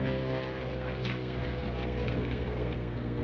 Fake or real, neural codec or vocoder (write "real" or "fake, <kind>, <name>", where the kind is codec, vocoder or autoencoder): fake, codec, SNAC